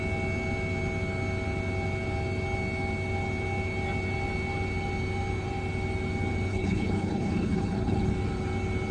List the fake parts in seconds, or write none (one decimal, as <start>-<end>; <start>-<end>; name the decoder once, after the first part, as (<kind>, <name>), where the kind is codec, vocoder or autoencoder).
6.5-8.1 (codec, HILCodec)